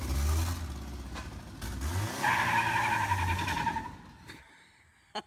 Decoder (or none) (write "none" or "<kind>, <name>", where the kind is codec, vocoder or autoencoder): none